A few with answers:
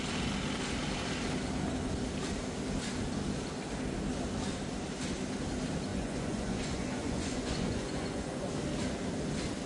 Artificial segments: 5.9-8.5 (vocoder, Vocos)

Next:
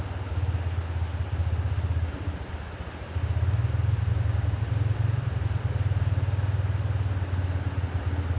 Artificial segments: none

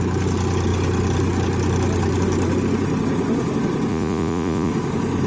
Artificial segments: 3.9-4.7 (vocoder, Vocos)

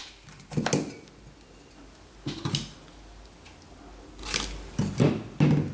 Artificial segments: none

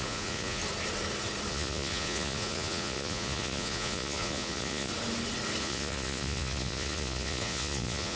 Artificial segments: 0.0-0.6 (vocoder, Vocos); 1.5-4.9; 5.6-8.2

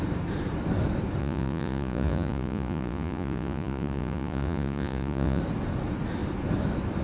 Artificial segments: 1.2-5.4 (vocoder, Vocos)